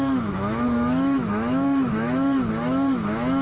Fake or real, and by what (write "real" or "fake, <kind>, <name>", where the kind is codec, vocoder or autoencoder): fake, autoencoder, DAC-VAE